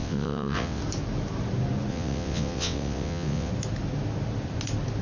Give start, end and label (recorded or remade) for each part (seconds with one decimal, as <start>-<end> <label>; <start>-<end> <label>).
0.0-0.8 remade; 0.8-1.9 recorded; 1.9-3.5 remade; 3.5-5.0 recorded